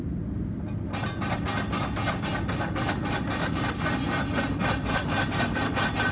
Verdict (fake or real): real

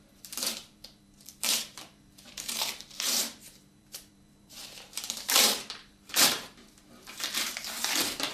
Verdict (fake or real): fake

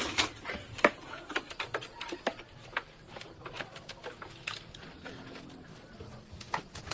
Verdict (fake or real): real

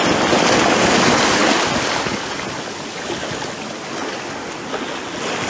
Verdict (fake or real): real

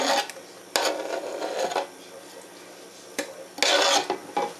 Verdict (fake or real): real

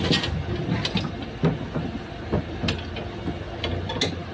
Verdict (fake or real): real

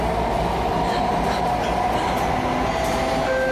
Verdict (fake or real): real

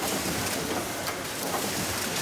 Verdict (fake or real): fake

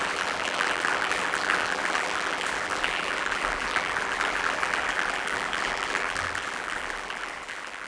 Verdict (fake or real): fake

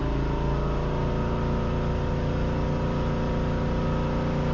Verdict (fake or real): real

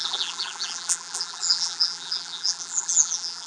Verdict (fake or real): fake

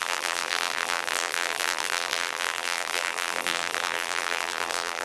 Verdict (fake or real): fake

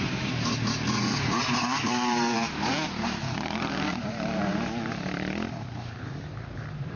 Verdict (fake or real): fake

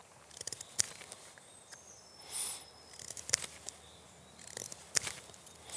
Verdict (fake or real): fake